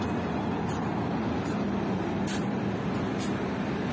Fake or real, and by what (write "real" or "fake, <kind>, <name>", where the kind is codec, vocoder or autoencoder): real